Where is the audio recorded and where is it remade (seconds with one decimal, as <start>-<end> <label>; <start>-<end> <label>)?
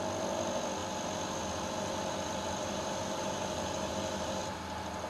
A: 0.0-0.8 recorded; 0.8-3.9 remade; 3.9-5.1 recorded